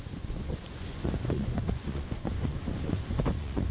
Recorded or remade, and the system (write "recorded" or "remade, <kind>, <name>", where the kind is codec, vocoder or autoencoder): remade, vocoder, Vocos